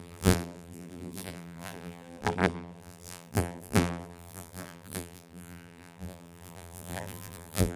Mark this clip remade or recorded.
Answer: remade